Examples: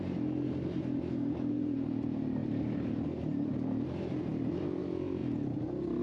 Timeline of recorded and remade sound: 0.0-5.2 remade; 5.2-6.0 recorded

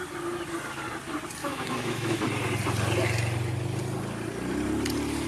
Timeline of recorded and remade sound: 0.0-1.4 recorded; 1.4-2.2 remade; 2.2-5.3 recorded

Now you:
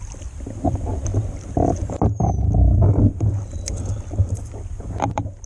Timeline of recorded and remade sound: 0.0-1.1 remade; 1.1-4.4 recorded; 4.4-5.5 remade

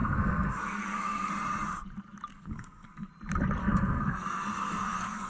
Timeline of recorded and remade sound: 0.0-1.3 remade; 1.3-2.3 recorded; 2.3-3.1 remade; 3.1-3.6 recorded; 3.6-5.3 remade

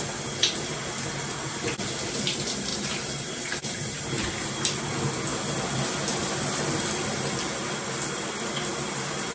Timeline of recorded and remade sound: 0.0-2.7 recorded; 2.7-4.0 remade; 4.0-8.7 recorded; 8.7-9.3 remade

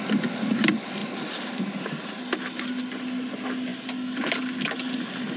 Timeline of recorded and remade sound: 0.0-5.4 recorded